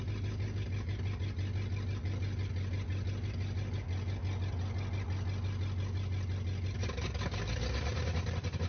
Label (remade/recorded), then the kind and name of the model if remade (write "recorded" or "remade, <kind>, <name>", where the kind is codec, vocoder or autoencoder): recorded